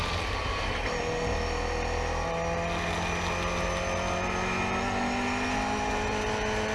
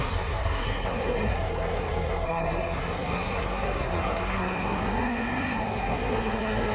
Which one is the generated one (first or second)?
second